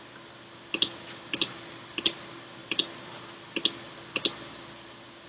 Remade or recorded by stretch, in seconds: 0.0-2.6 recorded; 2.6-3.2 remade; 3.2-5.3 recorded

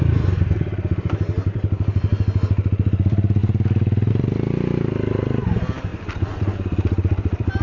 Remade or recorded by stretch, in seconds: 0.0-2.1 remade; 2.1-2.7 recorded; 2.7-3.4 remade; 3.4-4.1 recorded; 4.1-7.6 remade